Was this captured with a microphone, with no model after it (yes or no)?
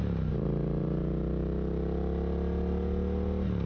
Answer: yes